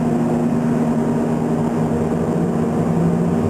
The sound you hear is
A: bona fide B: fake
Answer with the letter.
A